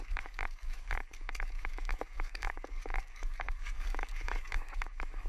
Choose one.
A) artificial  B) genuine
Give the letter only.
A